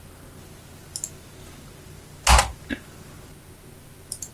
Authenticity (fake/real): real